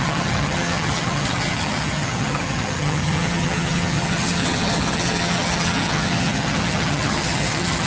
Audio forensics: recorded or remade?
remade